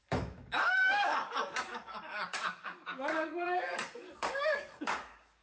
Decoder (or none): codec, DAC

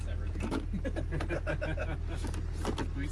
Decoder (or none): none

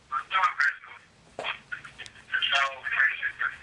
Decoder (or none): none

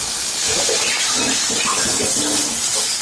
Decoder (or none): none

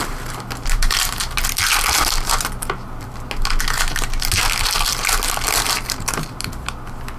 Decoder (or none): none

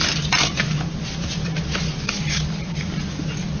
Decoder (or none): vocoder, BigVGAN v2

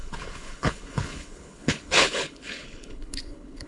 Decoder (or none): codec, HILCodec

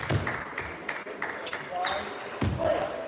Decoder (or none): none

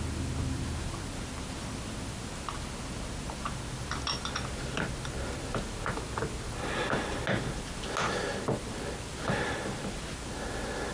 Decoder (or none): none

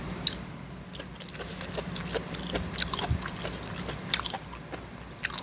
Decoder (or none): none